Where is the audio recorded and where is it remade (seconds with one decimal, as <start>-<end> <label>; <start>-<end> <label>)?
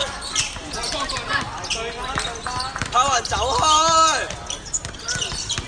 0.0-5.7 recorded